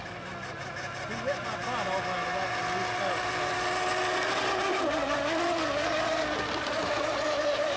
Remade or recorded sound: recorded